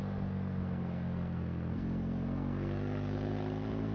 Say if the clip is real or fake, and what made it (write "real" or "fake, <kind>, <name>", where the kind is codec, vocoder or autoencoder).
fake, codec, SNAC